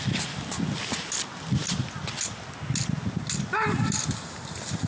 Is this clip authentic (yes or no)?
yes